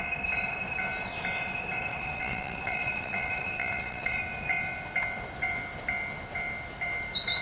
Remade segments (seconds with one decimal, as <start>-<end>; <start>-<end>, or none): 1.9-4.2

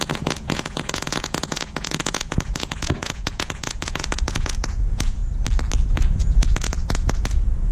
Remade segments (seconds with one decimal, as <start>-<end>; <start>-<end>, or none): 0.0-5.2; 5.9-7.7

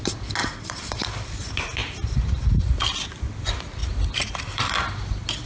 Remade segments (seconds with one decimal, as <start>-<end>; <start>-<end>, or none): 0.4-1.4; 1.8-3.3; 3.8-4.7